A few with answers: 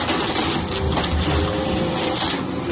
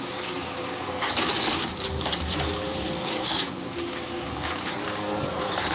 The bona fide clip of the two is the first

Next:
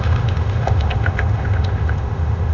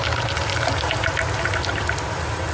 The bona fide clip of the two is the second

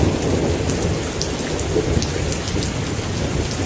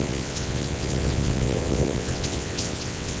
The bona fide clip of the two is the first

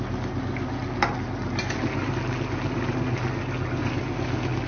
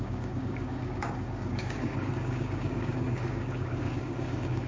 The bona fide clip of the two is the first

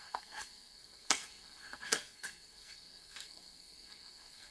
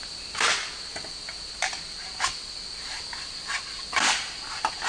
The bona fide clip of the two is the second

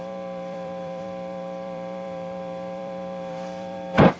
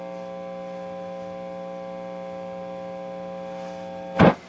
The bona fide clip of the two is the second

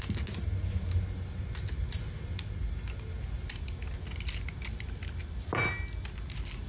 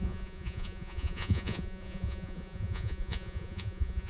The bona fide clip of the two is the first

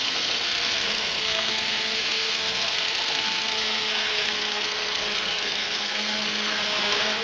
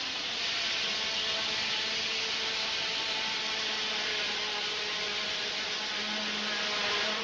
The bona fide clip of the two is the second